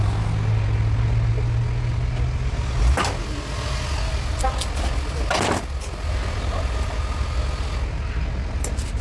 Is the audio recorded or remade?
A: recorded